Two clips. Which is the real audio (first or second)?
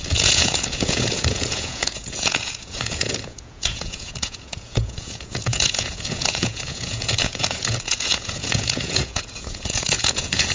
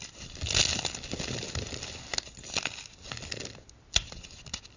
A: second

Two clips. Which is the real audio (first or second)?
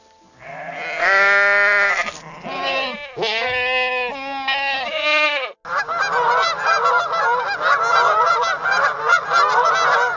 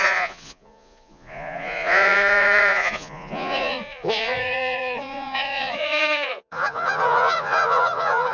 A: first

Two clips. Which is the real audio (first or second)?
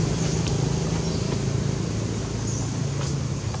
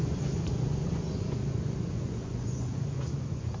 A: first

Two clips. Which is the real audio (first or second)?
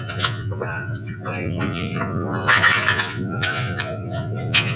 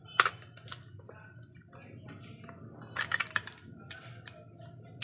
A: second